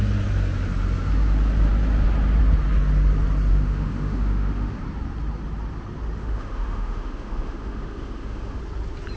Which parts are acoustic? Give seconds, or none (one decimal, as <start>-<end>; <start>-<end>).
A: 0.0-3.5; 4.8-6.2; 8.6-9.2